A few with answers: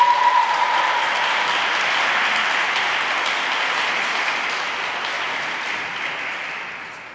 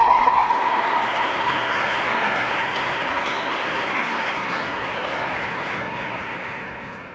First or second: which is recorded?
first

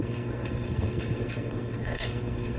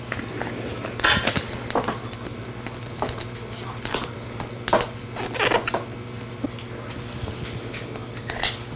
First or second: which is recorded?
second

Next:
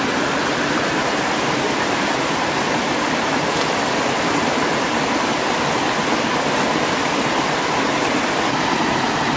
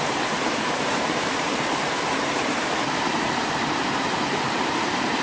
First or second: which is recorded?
first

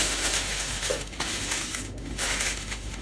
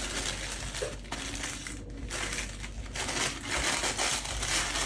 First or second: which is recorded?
second